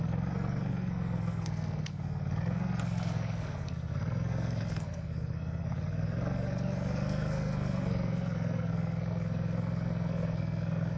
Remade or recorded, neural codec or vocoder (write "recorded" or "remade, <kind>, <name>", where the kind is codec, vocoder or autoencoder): remade, codec, SNAC